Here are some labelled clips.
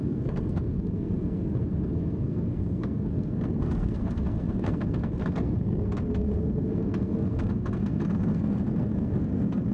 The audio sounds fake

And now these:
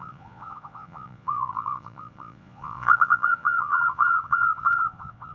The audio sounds fake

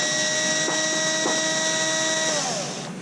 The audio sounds real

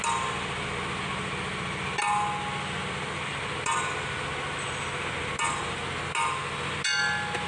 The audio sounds real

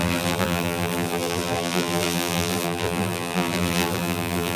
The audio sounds fake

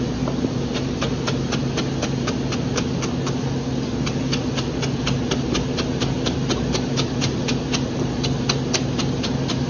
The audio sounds real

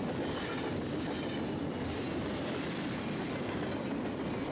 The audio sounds real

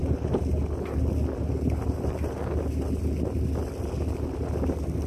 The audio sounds real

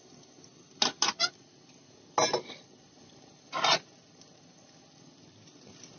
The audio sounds real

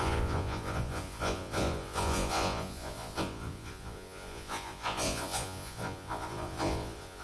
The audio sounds fake